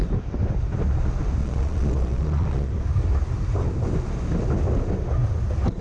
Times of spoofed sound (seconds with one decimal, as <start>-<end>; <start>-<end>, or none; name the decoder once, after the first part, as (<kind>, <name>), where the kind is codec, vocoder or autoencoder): 1.4-2.7 (vocoder, Vocos)